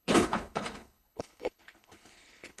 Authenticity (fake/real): fake